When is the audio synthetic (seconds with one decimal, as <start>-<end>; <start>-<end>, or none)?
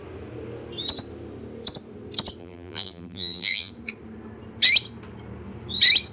2.4-3.7